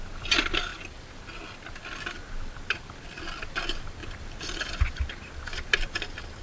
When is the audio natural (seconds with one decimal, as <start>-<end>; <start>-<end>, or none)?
0.0-4.0; 4.8-6.4